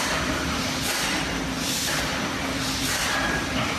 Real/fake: fake